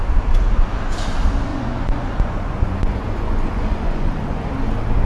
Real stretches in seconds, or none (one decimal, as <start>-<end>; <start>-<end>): 0.0-1.5; 4.5-5.1